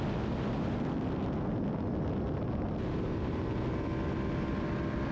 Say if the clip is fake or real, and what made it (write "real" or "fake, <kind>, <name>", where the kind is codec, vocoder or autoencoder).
real